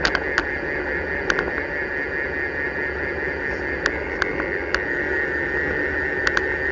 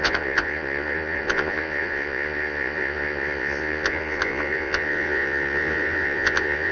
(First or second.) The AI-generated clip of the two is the second